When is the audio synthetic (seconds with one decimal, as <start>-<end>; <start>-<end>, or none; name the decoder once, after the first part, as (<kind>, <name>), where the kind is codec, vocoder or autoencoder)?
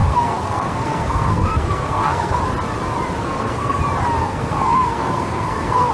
0.0-2.4 (codec, SNAC); 3.2-3.8; 4.2-5.9